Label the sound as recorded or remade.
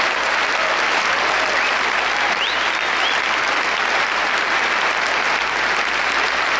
recorded